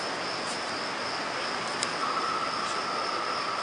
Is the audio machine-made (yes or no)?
no